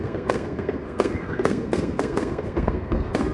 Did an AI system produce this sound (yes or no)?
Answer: yes